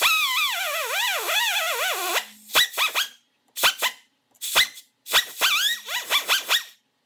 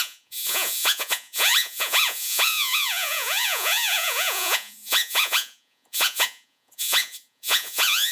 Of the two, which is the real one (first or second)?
first